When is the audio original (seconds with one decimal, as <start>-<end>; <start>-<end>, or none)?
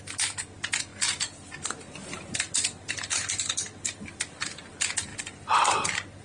0.0-6.2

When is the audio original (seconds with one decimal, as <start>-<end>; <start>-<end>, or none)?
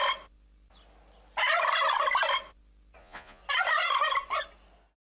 0.0-3.0; 3.4-5.0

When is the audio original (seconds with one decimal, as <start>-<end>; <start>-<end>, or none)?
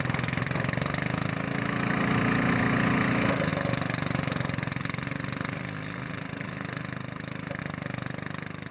0.0-8.7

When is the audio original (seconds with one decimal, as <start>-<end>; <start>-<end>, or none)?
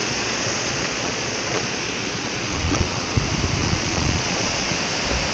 3.2-3.6; 4.8-5.3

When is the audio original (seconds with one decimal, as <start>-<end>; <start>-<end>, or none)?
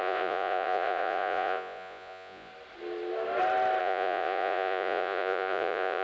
2.5-3.8